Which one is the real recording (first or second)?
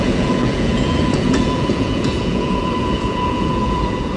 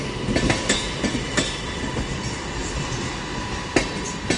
second